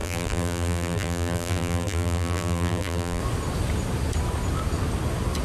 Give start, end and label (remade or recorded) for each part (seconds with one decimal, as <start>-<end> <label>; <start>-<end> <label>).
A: 0.0-3.2 remade; 3.2-5.4 recorded